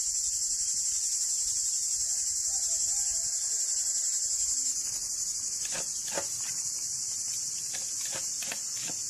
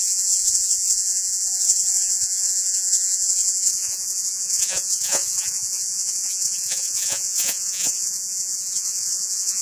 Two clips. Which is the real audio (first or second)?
first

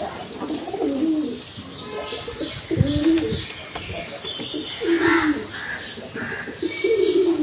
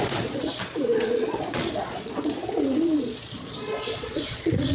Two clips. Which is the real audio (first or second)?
first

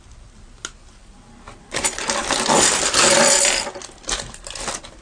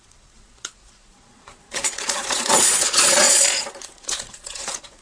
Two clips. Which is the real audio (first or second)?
first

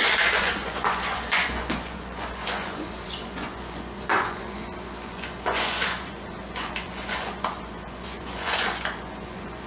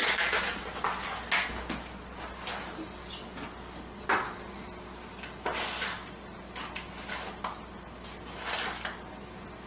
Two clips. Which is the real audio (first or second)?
second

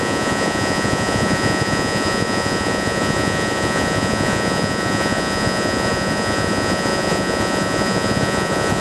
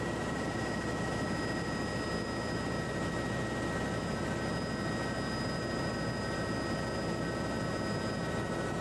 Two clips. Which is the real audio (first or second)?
second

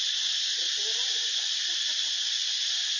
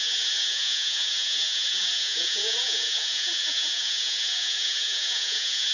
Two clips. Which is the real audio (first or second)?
first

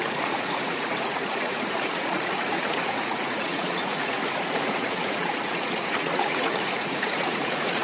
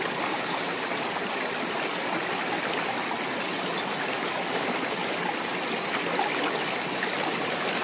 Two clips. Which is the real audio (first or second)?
second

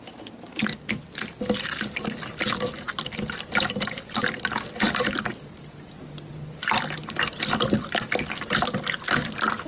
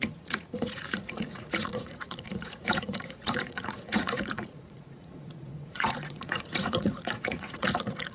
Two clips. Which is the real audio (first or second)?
first